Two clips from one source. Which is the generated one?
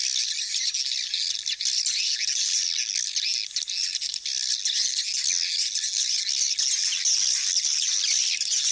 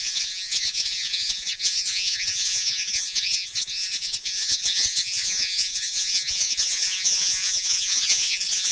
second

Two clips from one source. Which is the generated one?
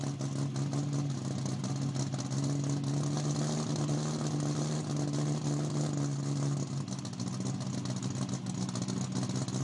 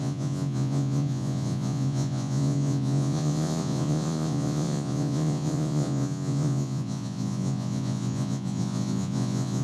second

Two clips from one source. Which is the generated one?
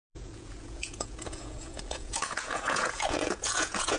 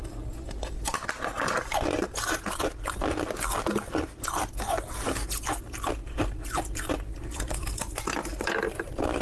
first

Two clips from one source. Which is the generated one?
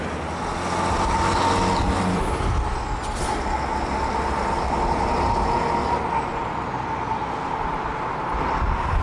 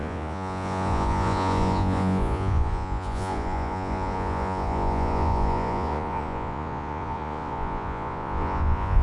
second